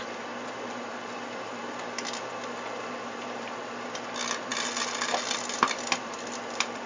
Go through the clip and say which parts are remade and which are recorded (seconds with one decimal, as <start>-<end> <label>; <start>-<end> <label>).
0.0-4.5 remade; 4.5-5.1 recorded; 5.1-6.9 remade